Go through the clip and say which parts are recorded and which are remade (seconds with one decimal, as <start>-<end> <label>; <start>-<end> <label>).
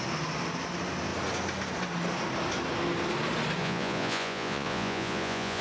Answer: 0.0-3.6 recorded; 3.6-5.6 remade